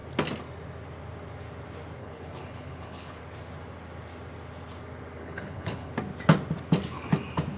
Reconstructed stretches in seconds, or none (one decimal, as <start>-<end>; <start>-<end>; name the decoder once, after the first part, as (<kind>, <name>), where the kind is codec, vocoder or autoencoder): 2.0-3.2 (codec, HILCodec); 5.2-5.9